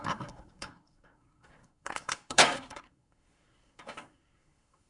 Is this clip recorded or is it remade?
remade